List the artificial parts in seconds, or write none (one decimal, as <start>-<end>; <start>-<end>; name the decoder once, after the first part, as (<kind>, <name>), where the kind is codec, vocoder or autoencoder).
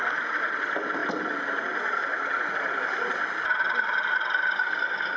none